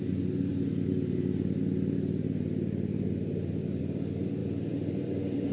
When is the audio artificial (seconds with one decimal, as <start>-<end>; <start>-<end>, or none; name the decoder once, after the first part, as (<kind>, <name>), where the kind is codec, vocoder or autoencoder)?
none

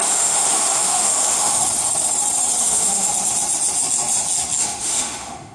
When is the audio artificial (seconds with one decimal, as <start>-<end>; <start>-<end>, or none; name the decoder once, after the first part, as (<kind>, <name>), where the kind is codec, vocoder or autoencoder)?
0.0-1.6 (autoencoder, DAC-VAE); 2.6-3.1; 4.6-5.5